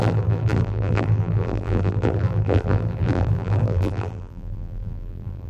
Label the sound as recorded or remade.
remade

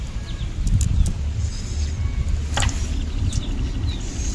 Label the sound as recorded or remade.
recorded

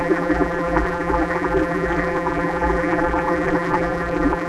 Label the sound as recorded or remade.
remade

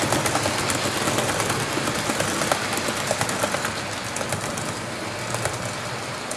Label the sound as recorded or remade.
recorded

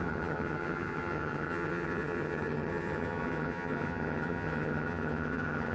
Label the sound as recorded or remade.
remade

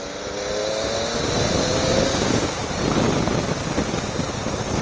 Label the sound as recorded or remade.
recorded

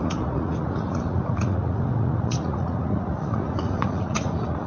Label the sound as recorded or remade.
remade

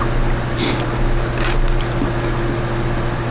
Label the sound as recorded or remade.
recorded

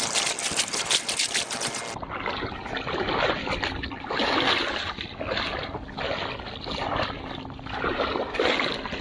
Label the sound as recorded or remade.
recorded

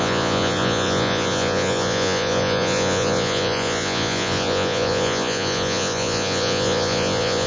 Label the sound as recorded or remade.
remade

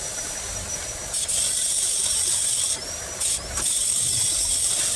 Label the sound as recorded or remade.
remade